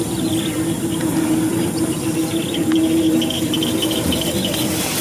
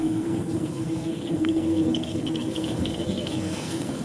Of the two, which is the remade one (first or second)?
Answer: second